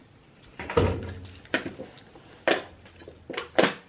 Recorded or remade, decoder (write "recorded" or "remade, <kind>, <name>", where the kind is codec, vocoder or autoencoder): recorded